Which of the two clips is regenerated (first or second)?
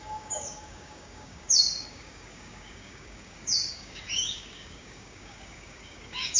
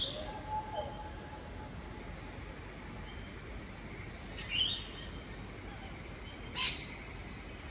first